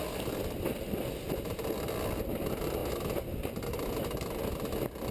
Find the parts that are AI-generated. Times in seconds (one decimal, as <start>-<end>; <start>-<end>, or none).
none